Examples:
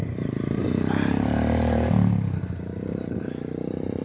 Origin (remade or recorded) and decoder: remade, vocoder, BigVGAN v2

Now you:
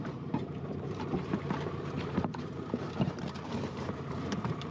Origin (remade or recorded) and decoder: remade, vocoder, BigVGAN v2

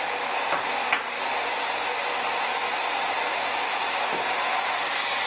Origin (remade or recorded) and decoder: recorded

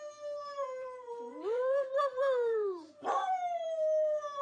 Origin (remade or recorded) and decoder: remade, vocoder, BigVGAN v2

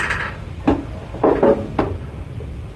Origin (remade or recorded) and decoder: recorded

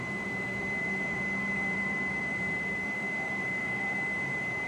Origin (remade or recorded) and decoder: remade, vocoder, BigVGAN v2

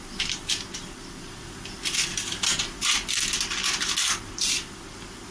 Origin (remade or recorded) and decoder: recorded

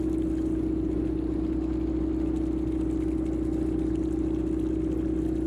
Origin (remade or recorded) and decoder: recorded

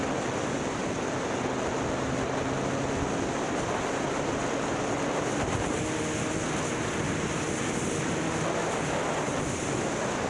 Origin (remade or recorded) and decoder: recorded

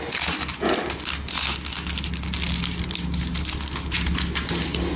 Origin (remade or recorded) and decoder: recorded